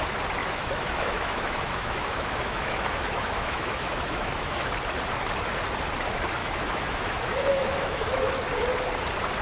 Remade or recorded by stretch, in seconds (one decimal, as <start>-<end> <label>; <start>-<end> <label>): 0.0-0.4 recorded; 0.4-4.7 remade; 4.7-6.4 recorded; 6.4-8.3 remade; 8.3-9.4 recorded